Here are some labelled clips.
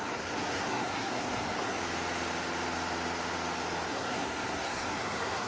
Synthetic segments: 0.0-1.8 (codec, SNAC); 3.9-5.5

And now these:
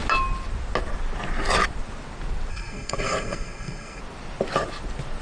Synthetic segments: 2.5-4.0 (codec, SNAC)

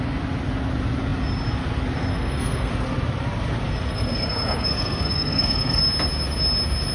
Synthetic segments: 2.1-2.7 (codec, SNAC); 3.9-5.8

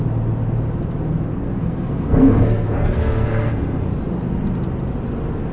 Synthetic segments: 1.3-3.5 (codec, SNAC)

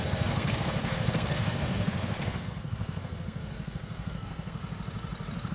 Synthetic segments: 0.0-4.6 (codec, SNAC)

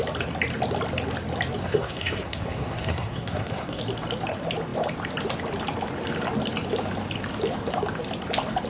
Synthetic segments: 1.6-3.8 (codec, SNAC)